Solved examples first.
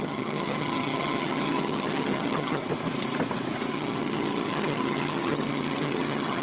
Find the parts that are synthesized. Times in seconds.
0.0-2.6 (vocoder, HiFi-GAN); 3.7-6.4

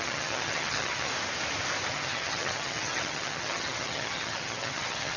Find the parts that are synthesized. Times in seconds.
0.0-1.1 (vocoder, HiFi-GAN); 1.9-5.2

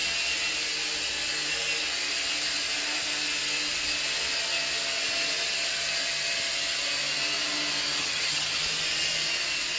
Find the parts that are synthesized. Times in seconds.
8.0-8.6 (vocoder, HiFi-GAN)